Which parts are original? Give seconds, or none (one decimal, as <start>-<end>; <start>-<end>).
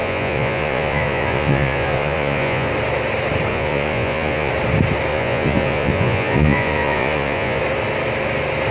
2.7-3.5; 4.5-5.1; 7.6-8.7